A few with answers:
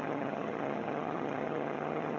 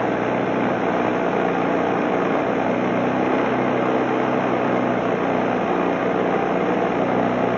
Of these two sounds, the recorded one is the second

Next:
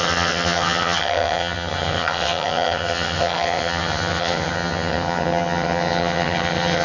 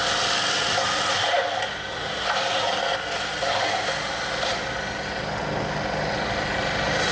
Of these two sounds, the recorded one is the second